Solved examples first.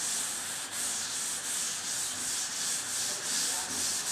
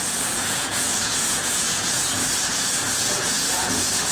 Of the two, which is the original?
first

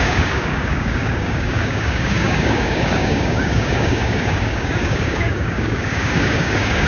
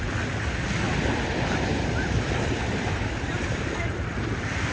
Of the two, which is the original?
second